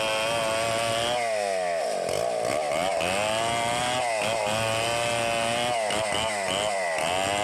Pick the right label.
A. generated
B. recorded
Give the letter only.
B